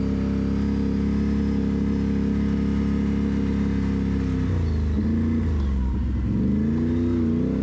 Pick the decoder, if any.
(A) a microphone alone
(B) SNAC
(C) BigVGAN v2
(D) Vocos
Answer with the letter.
A